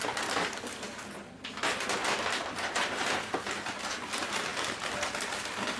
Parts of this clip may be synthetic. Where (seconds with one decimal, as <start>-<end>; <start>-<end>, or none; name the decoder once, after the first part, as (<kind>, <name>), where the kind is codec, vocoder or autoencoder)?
none